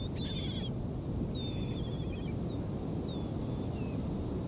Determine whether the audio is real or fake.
real